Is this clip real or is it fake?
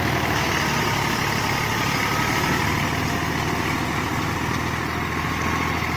real